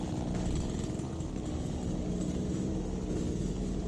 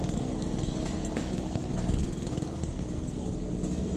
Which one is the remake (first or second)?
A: second